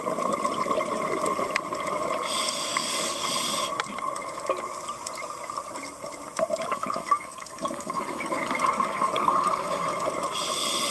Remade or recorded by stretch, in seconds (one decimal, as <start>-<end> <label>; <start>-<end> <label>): 0.0-2.7 recorded; 2.7-3.3 remade; 3.3-6.7 recorded; 6.7-10.1 remade; 10.1-10.9 recorded